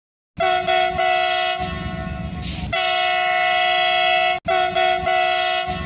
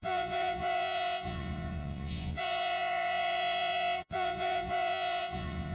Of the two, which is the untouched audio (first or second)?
first